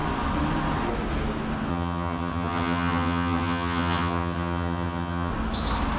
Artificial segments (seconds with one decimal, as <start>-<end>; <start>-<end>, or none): 1.7-5.3